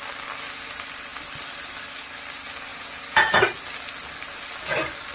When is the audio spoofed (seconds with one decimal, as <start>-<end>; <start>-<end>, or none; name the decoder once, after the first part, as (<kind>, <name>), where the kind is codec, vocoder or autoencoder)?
2.7-3.4 (vocoder, Vocos)